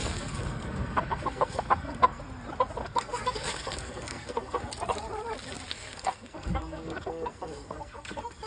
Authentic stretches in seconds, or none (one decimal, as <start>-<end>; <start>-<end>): 2.2-2.8; 4.7-5.7